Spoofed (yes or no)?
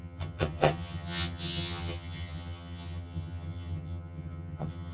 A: yes